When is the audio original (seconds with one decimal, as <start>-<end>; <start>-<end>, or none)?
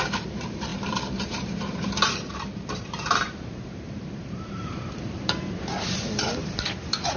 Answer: none